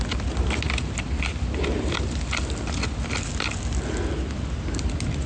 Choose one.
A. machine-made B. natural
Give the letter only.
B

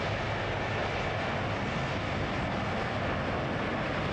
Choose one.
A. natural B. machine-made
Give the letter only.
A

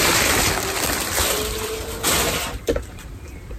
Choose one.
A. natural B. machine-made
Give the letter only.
B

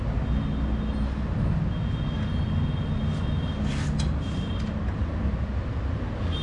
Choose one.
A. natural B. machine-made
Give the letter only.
A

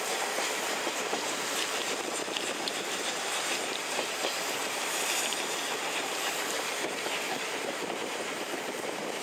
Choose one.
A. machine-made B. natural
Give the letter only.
A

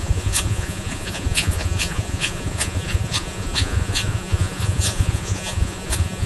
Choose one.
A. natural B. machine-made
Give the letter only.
B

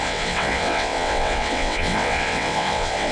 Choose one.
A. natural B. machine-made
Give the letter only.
B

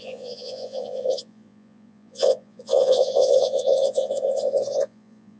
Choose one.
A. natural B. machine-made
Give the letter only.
B